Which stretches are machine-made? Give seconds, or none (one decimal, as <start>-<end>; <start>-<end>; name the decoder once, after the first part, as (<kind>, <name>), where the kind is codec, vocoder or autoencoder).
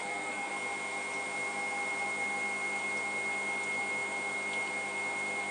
0.0-0.5 (codec, SNAC)